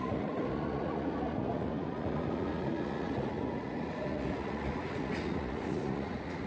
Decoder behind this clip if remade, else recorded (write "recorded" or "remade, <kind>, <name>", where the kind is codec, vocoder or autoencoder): remade, vocoder, Vocos